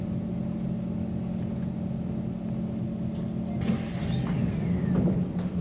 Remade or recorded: recorded